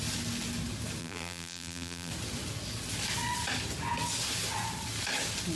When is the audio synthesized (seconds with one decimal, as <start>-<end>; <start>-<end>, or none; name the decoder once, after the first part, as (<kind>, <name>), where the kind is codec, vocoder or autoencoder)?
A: 1.0-2.1 (vocoder, BigVGAN v2)